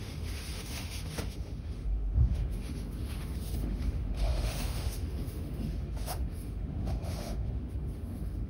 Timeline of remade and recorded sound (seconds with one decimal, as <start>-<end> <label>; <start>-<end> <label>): 0.0-8.5 remade